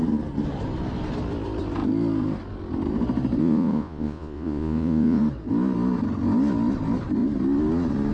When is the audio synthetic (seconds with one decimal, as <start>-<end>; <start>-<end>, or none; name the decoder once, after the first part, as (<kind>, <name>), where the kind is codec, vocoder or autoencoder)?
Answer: 3.4-5.2 (vocoder, Vocos)